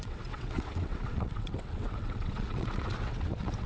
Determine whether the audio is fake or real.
fake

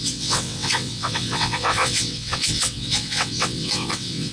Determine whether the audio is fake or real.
fake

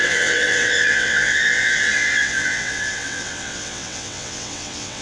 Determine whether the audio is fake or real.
fake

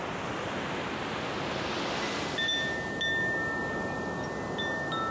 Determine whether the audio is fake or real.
real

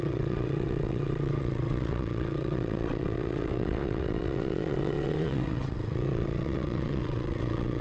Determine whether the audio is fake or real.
fake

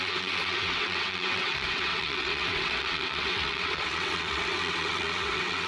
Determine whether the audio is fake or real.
fake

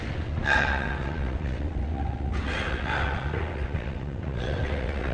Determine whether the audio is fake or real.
fake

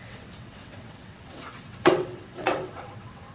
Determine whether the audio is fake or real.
fake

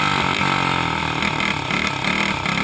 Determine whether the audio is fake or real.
real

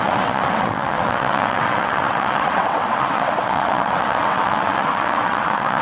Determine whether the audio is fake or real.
fake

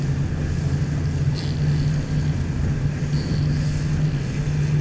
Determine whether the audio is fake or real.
real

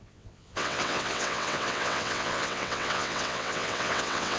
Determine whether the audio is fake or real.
fake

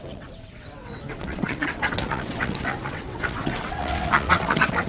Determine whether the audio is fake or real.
fake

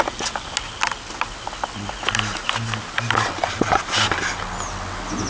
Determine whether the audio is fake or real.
real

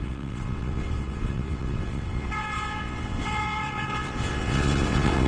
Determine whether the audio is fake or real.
fake